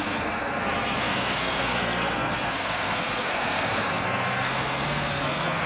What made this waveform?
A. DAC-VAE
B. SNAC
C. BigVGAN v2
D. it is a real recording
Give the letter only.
B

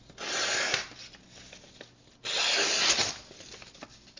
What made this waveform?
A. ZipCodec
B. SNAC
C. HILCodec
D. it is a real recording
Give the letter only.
D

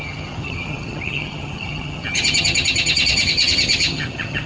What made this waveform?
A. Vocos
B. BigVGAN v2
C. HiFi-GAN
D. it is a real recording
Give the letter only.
C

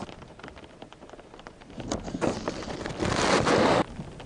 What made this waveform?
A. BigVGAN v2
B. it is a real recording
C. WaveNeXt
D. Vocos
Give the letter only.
B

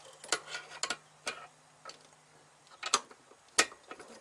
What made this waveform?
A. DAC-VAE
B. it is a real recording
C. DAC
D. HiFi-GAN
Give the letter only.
B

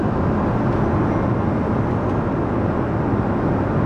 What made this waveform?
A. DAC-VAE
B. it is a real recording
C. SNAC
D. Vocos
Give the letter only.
B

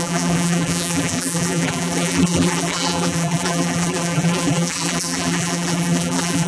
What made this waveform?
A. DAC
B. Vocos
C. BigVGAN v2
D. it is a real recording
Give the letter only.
C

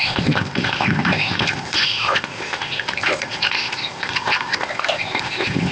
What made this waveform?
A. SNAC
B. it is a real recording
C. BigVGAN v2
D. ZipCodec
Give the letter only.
D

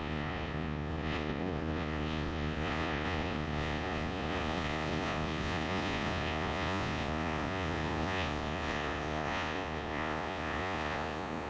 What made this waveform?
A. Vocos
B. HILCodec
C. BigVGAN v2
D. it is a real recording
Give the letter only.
A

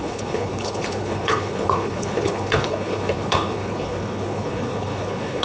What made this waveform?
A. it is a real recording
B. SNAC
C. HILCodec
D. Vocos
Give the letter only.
C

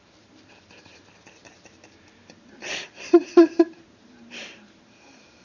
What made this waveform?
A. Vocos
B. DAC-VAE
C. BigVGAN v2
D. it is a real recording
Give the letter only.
C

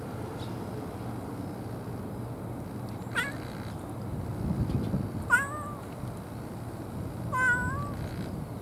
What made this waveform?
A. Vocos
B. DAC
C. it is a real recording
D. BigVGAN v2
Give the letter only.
C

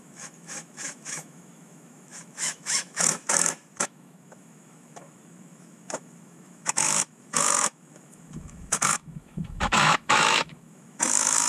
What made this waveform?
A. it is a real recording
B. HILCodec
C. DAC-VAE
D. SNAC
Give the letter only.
C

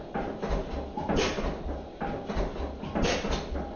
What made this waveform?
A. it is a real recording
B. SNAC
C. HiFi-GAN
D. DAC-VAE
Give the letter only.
A